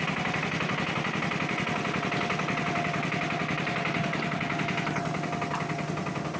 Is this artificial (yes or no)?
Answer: no